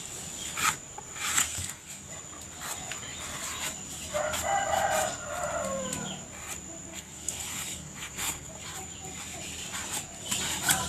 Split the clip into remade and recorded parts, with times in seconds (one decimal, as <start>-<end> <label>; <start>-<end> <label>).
0.0-1.4 recorded; 1.4-2.1 remade; 2.1-6.9 recorded; 6.9-8.5 remade; 8.5-10.9 recorded